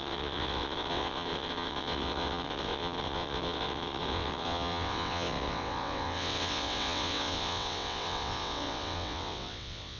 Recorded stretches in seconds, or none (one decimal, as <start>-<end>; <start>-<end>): none